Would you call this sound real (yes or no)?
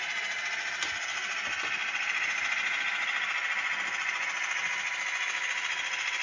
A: yes